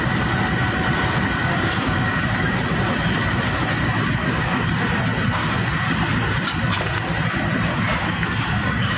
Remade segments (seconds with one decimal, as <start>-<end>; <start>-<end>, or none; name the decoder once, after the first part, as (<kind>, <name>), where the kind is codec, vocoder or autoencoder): 1.4-2.3 (codec, DAC); 4.2-4.7; 7.7-9.0